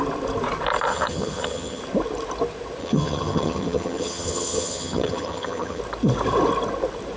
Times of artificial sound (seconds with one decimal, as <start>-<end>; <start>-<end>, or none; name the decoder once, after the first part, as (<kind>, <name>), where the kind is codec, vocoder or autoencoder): 0.9-1.8 (vocoder, HiFi-GAN); 2.8-5.8